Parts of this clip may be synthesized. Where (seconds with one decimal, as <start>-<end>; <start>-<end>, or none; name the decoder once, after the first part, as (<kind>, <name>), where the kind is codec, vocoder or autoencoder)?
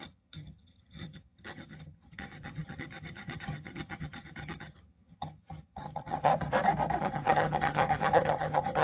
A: 0.0-6.3 (vocoder, HiFi-GAN); 7.0-8.8